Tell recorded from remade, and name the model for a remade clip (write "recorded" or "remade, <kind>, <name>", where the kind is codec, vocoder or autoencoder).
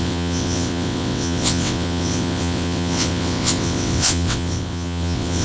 remade, vocoder, WaveNeXt